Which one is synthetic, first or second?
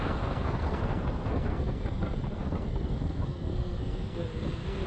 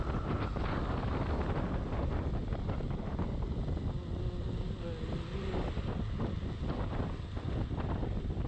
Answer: first